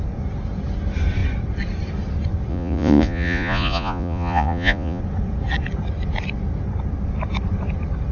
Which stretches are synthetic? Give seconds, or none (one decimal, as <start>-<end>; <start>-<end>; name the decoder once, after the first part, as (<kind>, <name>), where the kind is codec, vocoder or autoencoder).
2.5-5.0 (vocoder, Vocos)